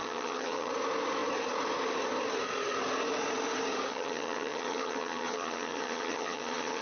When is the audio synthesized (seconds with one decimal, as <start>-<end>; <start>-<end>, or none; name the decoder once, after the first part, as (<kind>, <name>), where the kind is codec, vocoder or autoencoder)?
0.0-0.7 (vocoder, HiFi-GAN); 3.9-6.8